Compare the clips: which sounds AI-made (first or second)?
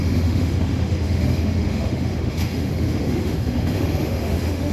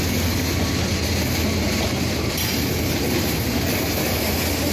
first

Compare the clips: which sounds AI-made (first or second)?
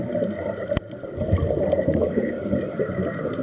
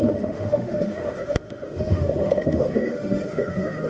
second